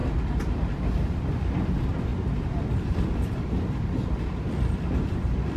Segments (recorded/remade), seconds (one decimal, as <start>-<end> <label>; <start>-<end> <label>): 0.0-5.6 remade